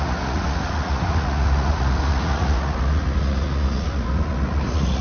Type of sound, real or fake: fake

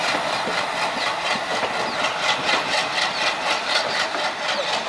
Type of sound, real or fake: real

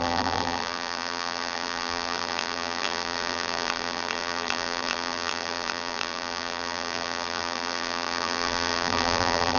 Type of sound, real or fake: fake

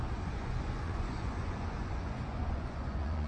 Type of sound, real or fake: fake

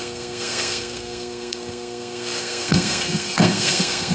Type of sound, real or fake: fake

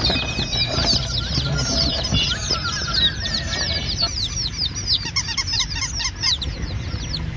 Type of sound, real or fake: fake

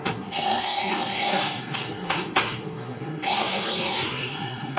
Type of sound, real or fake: fake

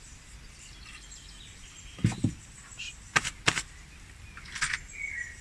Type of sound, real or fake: real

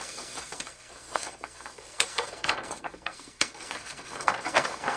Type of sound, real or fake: fake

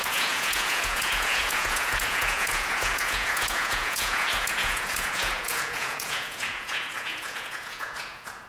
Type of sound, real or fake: fake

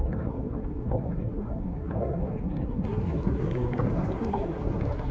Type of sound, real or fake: fake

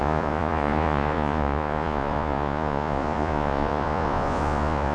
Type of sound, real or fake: fake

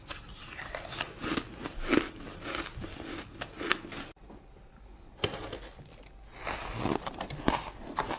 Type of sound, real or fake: real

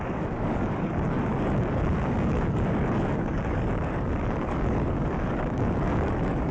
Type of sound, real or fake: fake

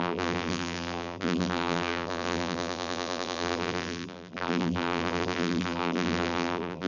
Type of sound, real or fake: fake